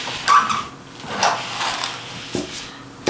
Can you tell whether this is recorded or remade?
recorded